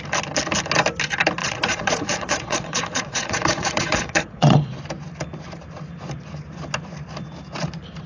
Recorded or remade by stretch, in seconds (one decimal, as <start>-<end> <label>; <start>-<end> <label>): 0.0-1.4 recorded; 1.4-4.7 remade; 4.7-8.1 recorded